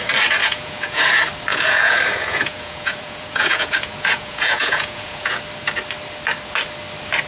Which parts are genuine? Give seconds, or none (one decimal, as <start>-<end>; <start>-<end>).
0.0-0.4; 1.1-1.5; 5.4-7.3

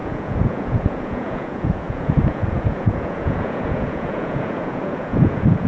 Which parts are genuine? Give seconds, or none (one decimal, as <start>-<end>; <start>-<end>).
none

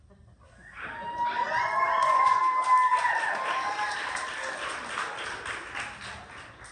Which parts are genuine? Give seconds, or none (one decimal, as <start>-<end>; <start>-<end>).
0.0-1.4; 2.4-6.7

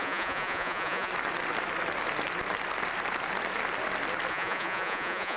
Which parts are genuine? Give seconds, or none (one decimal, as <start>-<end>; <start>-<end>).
1.1-4.3

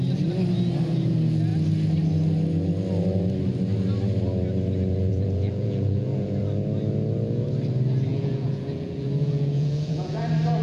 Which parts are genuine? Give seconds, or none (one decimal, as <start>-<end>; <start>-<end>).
0.0-5.1; 6.4-8.1; 10.2-10.6